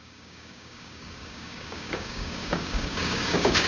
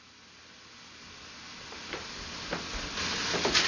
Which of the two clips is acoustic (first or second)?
second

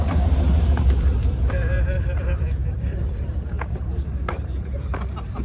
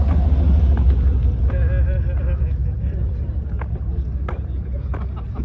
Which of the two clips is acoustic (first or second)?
second